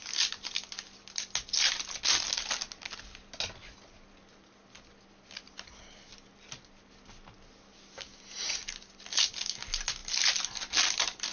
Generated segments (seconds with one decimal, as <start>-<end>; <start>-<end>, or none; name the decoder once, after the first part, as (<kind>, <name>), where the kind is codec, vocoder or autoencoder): none